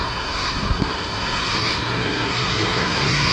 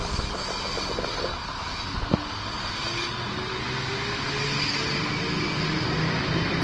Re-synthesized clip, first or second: first